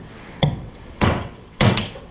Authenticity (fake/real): fake